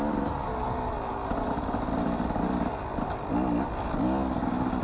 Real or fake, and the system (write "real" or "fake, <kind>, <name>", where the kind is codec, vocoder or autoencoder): real